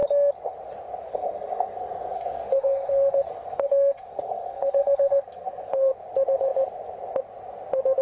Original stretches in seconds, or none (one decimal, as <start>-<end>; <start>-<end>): 0.0-1.1; 5.9-8.0